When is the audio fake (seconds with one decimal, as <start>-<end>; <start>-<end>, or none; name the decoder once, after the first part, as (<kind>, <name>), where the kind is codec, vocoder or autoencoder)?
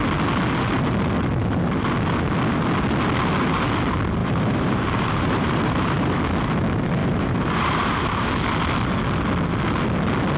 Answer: 4.2-6.2 (vocoder, BigVGAN v2); 7.0-8.3